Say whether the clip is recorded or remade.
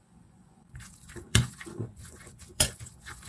remade